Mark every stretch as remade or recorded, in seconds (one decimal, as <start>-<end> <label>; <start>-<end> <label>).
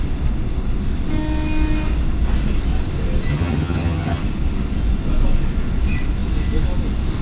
0.0-3.3 recorded; 3.3-4.2 remade; 4.2-7.2 recorded